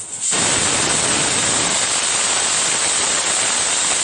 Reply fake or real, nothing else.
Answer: real